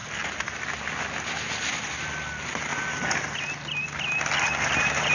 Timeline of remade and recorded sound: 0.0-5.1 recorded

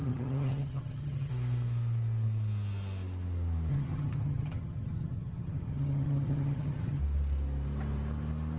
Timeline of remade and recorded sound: 0.0-1.3 remade; 1.3-3.7 recorded; 3.7-7.0 remade; 7.0-8.6 recorded

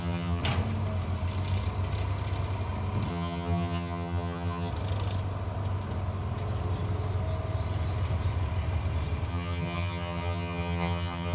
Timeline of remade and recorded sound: 0.0-0.4 remade; 0.4-3.1 recorded; 3.1-4.7 remade; 4.7-9.3 recorded; 9.3-11.3 remade

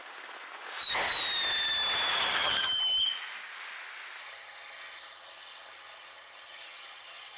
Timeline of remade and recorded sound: 0.0-2.1 recorded; 2.1-2.8 remade; 2.8-4.2 recorded; 4.2-7.4 remade

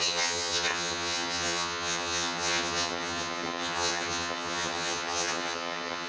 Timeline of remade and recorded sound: 0.0-6.1 remade

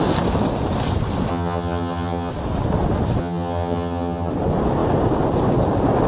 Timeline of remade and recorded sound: 0.0-1.3 recorded; 1.3-2.3 remade; 2.3-3.2 recorded; 3.2-4.3 remade; 4.3-6.1 recorded

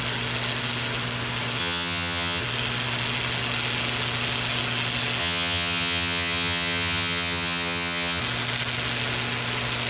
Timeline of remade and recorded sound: 0.0-1.6 recorded; 1.6-2.4 remade; 2.4-5.2 recorded; 5.2-8.2 remade; 8.2-9.9 recorded

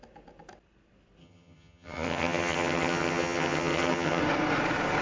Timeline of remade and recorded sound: 0.0-1.2 recorded; 1.2-4.2 remade; 4.2-5.0 recorded